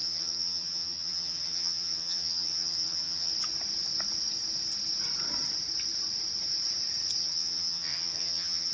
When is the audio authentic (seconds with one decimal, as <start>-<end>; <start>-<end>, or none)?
3.3-7.2